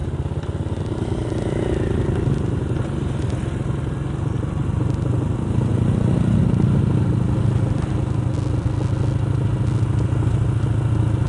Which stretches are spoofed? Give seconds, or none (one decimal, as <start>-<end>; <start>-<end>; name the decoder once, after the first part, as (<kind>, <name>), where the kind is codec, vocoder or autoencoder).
5.7-6.4 (vocoder, BigVGAN v2)